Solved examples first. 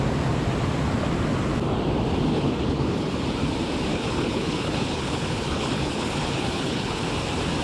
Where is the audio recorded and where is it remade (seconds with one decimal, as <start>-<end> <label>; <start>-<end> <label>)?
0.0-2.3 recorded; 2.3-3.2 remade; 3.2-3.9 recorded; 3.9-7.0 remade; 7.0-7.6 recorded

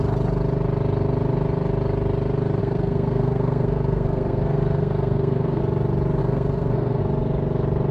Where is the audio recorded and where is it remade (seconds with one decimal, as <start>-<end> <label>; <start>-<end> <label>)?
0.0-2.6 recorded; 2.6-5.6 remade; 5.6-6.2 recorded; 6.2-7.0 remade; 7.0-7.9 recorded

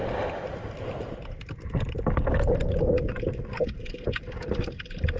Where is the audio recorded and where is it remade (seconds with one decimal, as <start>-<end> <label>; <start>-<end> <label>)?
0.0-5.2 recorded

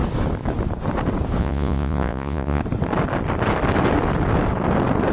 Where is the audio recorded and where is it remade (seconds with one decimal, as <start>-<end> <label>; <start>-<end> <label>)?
0.0-1.4 recorded; 1.4-2.6 remade; 2.6-5.1 recorded

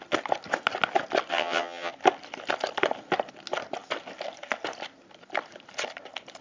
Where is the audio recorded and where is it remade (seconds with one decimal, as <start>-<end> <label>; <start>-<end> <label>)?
0.0-1.3 recorded; 1.3-1.9 remade; 1.9-6.4 recorded

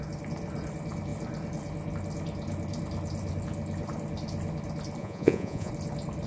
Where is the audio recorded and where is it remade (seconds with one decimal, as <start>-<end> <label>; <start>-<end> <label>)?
0.0-5.0 recorded; 5.0-5.7 remade; 5.7-6.3 recorded